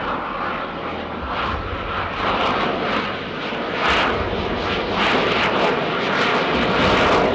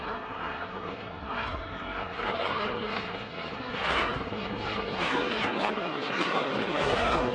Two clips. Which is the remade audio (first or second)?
second